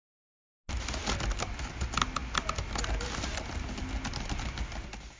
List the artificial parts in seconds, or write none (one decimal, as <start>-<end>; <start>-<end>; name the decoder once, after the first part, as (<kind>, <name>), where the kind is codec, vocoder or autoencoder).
none